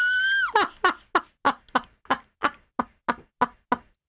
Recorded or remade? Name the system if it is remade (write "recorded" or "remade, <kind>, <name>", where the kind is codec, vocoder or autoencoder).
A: recorded